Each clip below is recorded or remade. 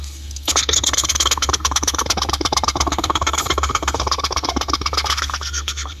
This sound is remade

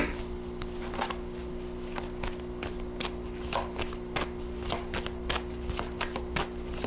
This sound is recorded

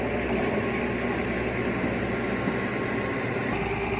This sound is recorded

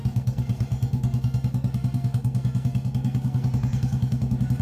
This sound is remade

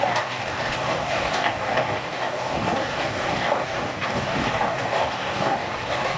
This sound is remade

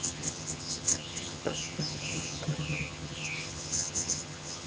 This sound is remade